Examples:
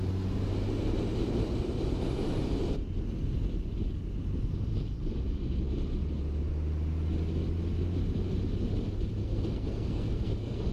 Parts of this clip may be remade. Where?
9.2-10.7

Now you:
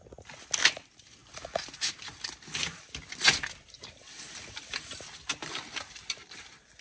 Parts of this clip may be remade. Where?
none

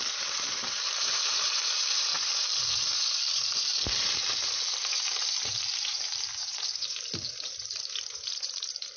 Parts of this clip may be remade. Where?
0.0-2.1; 2.6-9.0

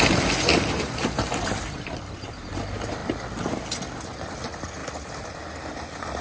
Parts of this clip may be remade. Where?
0.5-2.5

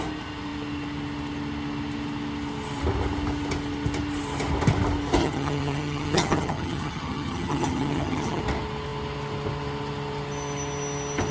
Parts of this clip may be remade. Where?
5.2-8.4

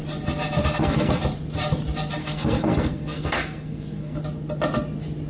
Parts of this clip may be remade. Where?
0.6-1.2; 2.2-4.2

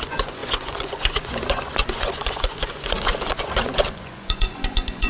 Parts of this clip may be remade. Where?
0.0-5.1

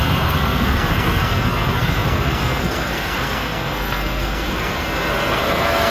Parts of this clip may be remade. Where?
0.0-5.9